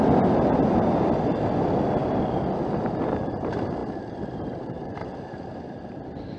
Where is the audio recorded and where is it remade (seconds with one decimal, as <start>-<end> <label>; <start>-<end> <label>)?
0.0-6.4 recorded